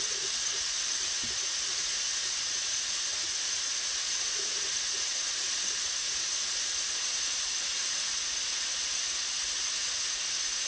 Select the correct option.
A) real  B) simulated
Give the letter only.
B